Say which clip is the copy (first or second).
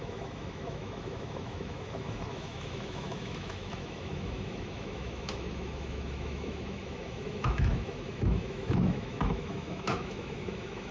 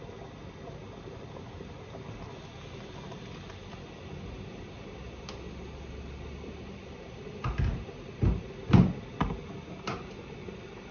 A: first